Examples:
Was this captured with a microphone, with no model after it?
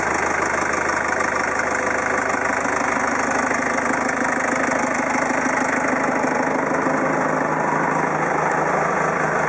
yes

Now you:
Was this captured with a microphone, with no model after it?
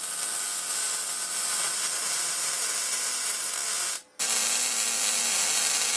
yes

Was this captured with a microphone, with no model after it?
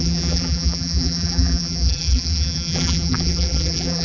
no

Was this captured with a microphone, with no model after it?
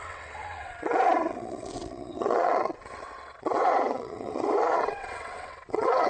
no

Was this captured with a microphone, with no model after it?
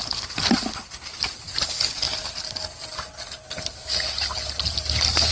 yes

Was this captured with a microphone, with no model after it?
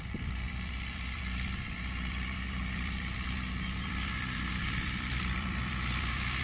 no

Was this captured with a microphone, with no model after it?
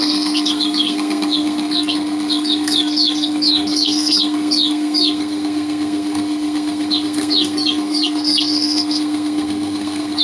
no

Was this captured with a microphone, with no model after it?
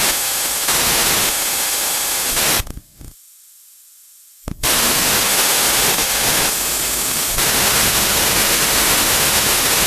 no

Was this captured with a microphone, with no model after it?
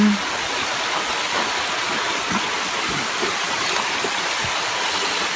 yes